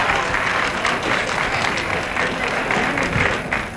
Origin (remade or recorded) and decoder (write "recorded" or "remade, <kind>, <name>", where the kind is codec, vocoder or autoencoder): recorded